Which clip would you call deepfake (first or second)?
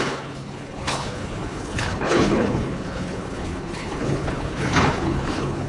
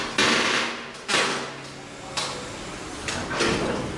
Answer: first